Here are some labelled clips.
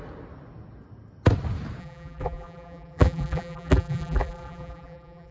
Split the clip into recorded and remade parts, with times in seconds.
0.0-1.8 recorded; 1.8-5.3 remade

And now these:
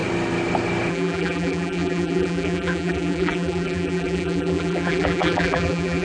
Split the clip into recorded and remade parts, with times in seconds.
0.0-0.9 recorded; 0.9-6.0 remade

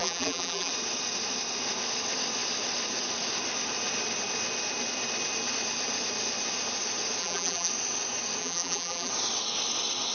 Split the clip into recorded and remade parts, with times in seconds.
0.0-0.7 remade; 0.7-7.2 recorded; 7.2-7.7 remade; 7.7-8.4 recorded; 8.4-9.1 remade; 9.1-10.1 recorded

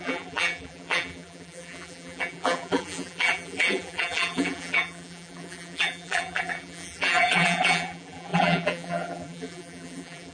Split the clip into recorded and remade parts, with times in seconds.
0.0-10.3 remade

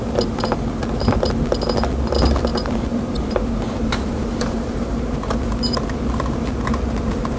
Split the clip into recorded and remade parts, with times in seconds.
0.0-2.5 recorded; 2.5-5.4 remade; 5.4-7.4 recorded

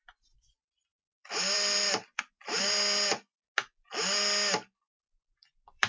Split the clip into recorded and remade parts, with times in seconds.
0.0-3.4 remade; 3.4-4.8 recorded; 4.8-5.9 remade

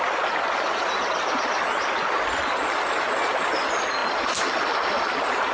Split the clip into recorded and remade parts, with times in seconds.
0.0-5.5 recorded